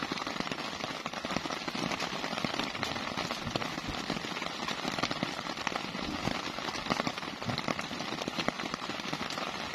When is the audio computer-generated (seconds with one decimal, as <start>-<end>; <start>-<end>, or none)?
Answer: 0.0-0.6